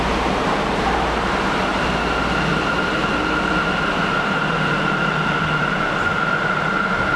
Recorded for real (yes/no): no